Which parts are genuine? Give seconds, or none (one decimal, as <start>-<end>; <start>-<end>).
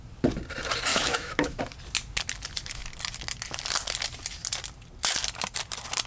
0.0-0.9; 1.6-6.1